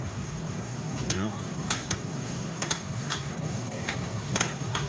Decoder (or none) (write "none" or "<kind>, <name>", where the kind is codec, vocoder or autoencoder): codec, SNAC